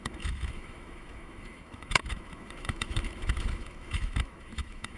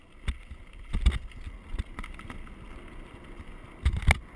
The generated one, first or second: first